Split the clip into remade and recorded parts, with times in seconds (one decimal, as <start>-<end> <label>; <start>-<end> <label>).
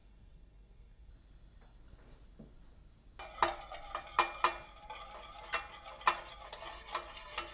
0.0-1.1 remade; 1.1-7.5 recorded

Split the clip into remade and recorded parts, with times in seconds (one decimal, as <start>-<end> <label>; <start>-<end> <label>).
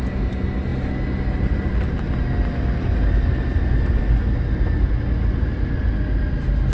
0.0-6.7 recorded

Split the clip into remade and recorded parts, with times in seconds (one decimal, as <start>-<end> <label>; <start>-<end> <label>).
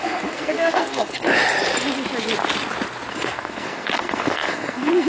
0.0-1.3 remade; 1.3-3.1 recorded; 3.1-5.1 remade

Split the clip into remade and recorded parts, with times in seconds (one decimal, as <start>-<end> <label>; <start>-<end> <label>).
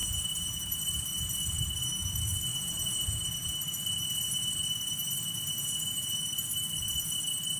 0.0-0.8 remade; 0.8-2.5 recorded; 2.5-6.2 remade; 6.2-7.6 recorded